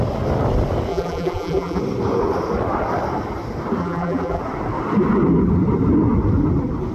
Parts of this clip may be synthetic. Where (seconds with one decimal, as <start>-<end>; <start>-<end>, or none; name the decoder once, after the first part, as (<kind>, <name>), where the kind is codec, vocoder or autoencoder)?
0.9-1.8 (vocoder, BigVGAN v2); 3.8-4.4